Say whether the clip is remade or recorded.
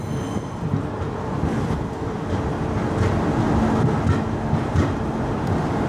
recorded